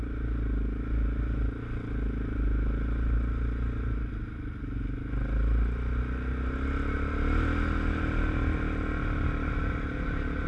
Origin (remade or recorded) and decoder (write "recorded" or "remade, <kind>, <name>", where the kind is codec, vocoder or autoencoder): recorded